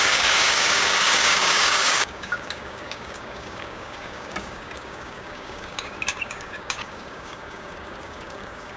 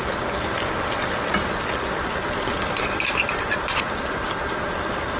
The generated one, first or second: first